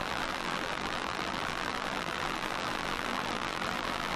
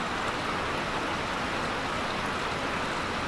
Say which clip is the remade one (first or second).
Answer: first